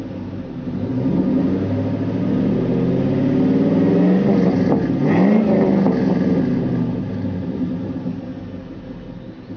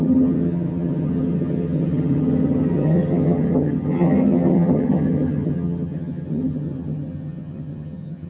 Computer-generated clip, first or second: second